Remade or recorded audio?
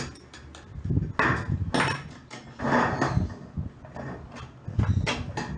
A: recorded